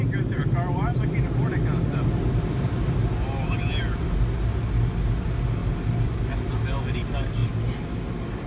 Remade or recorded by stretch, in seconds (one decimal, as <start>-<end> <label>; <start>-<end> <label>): 0.0-5.6 recorded; 5.6-6.2 remade; 6.2-7.4 recorded; 7.4-8.5 remade